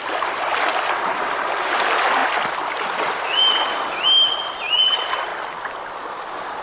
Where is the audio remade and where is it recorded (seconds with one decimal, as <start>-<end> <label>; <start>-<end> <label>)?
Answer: 0.0-0.7 recorded; 0.7-1.2 remade; 1.2-6.6 recorded

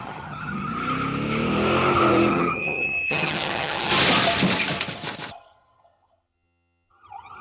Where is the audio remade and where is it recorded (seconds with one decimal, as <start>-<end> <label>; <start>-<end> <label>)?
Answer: 0.0-0.7 remade; 0.7-2.3 recorded; 2.3-3.9 remade; 3.9-5.3 recorded; 5.3-7.4 remade

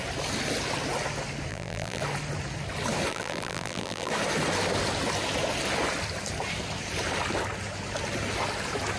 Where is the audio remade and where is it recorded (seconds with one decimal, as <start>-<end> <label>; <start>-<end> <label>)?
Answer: 0.0-1.5 recorded; 1.5-2.0 remade; 2.0-3.1 recorded; 3.1-4.1 remade; 4.1-9.0 recorded

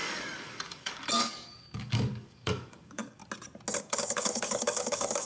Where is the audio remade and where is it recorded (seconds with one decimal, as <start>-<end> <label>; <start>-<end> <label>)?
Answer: 0.0-3.2 remade; 3.2-3.8 recorded; 3.8-5.3 remade

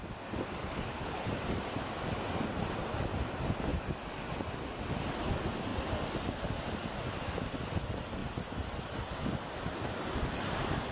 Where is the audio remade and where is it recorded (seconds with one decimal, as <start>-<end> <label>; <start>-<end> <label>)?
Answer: 0.0-0.6 recorded; 0.6-1.2 remade; 1.2-10.9 recorded

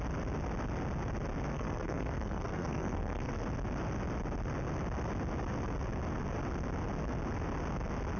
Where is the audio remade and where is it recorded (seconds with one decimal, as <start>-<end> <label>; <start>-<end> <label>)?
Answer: 0.0-1.5 recorded; 1.5-3.3 remade; 3.3-8.2 recorded